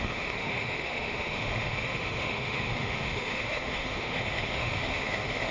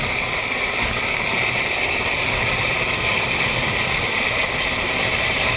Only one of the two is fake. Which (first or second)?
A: first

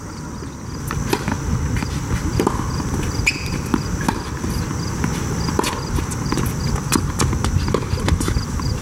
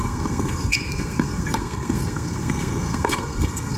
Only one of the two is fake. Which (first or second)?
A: second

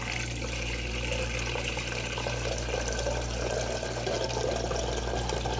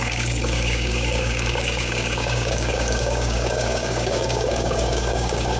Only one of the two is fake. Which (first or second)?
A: second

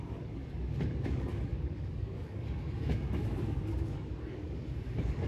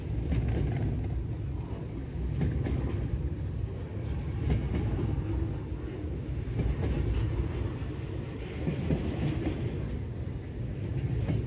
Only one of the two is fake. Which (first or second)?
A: first